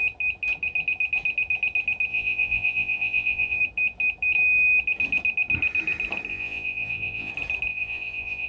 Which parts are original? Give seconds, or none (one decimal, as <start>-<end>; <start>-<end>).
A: 0.0-2.1; 3.6-6.3; 7.3-7.7